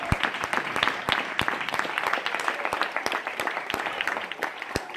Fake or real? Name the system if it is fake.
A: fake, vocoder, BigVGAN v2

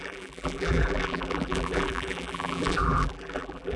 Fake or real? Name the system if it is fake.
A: fake, vocoder, BigVGAN v2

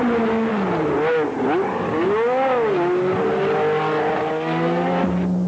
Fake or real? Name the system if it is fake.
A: real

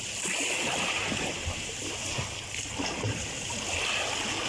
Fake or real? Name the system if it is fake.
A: real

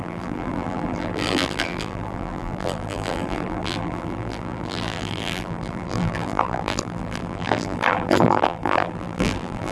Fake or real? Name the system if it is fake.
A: fake, vocoder, BigVGAN v2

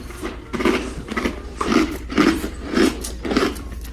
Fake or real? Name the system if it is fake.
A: fake, vocoder, BigVGAN v2